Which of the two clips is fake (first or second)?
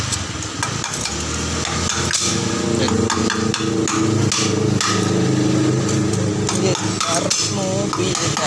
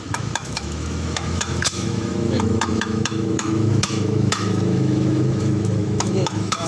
second